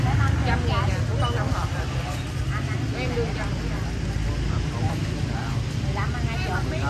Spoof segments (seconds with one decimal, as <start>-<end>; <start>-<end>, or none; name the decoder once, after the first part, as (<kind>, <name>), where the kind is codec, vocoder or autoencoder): none